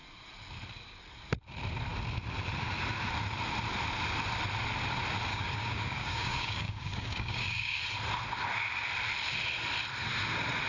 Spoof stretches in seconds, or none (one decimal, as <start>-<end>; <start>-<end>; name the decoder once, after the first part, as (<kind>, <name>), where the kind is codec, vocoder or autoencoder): 5.3-7.8 (codec, DAC)